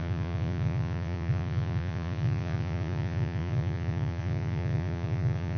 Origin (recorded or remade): remade